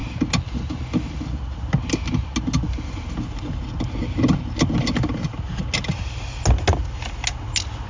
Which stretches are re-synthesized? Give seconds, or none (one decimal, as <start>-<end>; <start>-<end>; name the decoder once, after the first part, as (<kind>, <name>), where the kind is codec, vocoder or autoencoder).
none